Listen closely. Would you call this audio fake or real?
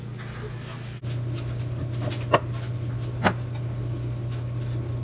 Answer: real